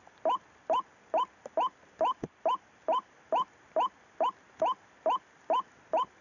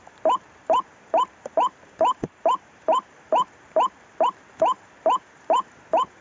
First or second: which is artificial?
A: second